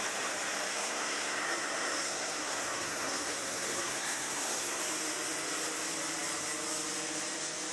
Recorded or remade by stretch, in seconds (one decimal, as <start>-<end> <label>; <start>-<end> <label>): 0.0-0.7 recorded; 0.7-4.8 remade; 4.8-7.7 recorded